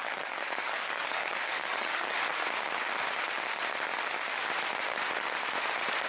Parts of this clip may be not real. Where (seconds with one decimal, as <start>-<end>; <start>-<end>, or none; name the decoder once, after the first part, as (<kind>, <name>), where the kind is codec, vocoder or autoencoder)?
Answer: 0.0-2.3 (codec, DAC)

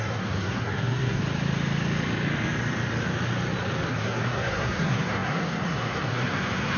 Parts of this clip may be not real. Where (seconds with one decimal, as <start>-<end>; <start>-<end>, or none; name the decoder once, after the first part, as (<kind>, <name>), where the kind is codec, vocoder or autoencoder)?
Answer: 0.0-1.2 (codec, SNAC); 3.9-6.8

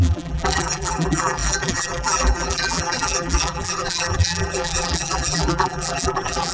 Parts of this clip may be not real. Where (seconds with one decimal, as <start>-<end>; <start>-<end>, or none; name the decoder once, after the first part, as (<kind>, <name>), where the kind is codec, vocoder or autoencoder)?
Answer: 0.0-6.5 (vocoder, BigVGAN v2)

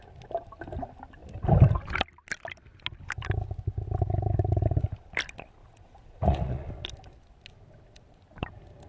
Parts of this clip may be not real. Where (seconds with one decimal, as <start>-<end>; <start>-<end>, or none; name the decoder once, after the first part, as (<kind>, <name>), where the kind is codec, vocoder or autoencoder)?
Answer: 5.6-6.7 (vocoder, Vocos)

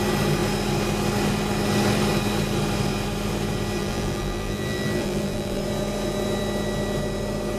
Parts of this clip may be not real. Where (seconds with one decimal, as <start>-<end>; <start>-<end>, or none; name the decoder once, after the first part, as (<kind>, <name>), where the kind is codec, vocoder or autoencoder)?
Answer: 3.8-5.6 (vocoder, BigVGAN v2)

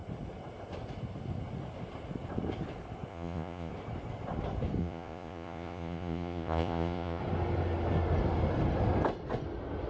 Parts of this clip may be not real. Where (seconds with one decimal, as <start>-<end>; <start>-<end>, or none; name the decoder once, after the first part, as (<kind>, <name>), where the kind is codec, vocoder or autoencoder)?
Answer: 3.1-3.7 (vocoder, Vocos); 4.8-7.2

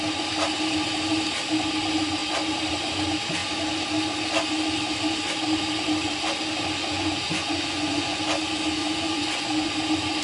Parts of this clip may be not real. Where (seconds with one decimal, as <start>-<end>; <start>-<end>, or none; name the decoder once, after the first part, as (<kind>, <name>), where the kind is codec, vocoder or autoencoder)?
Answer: 6.8-8.2 (vocoder, Vocos); 8.8-9.7